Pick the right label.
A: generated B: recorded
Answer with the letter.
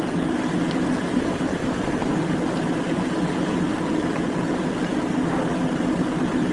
B